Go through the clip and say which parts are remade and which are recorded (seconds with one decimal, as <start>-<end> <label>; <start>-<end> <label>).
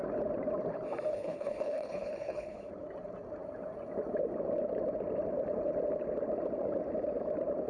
0.0-1.1 recorded; 1.1-2.7 remade; 2.7-7.7 recorded